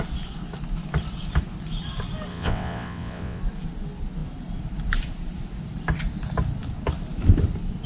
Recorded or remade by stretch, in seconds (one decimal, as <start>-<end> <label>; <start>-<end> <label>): 0.0-2.3 recorded; 2.3-3.4 remade; 3.4-7.9 recorded